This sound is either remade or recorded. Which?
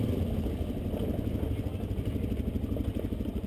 recorded